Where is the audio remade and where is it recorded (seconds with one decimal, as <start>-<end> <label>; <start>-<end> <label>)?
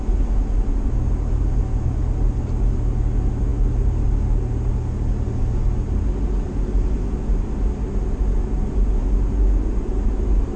0.0-10.6 recorded